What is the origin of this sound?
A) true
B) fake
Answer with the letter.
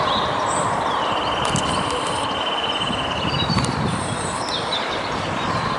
B